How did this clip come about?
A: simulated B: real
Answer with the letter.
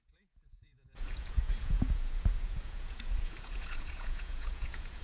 A